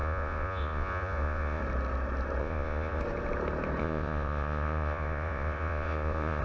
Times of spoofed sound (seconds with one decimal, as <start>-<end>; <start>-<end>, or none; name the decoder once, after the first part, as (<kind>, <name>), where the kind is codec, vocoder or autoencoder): 0.0-1.6 (vocoder, Vocos); 2.4-3.0; 3.8-6.4